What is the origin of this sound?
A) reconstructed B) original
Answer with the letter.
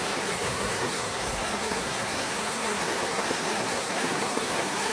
A